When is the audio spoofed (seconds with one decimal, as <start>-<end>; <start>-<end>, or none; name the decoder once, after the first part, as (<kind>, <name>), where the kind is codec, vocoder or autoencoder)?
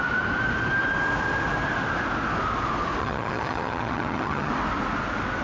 3.0-4.5 (vocoder, HiFi-GAN)